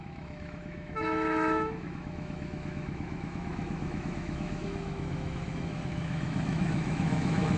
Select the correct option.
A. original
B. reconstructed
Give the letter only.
B